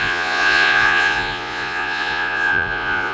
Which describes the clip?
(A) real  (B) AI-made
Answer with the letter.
B